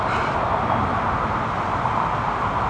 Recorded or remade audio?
recorded